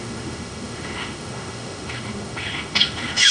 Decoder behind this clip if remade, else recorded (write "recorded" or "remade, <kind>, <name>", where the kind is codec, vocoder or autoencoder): remade, autoencoder, DAC-VAE